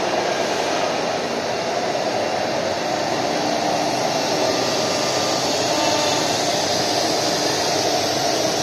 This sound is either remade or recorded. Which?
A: recorded